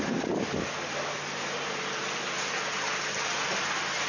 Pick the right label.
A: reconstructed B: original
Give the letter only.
B